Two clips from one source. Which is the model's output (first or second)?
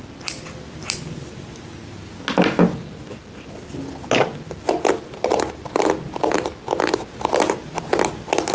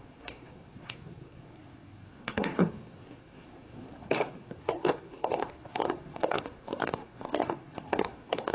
second